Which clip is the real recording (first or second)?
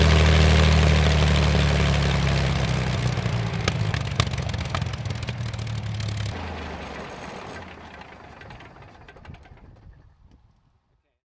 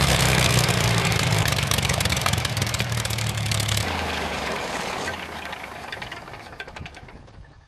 first